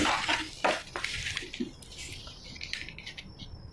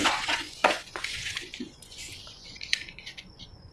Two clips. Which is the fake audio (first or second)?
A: second